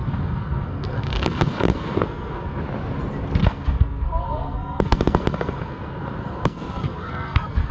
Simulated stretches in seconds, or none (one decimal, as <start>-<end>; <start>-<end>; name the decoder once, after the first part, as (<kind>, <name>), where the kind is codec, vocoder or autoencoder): 0.0-2.6 (codec, SNAC); 3.4-7.7